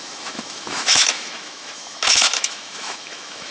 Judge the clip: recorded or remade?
remade